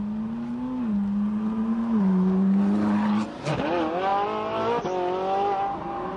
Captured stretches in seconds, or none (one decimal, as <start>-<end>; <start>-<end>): 0.0-6.2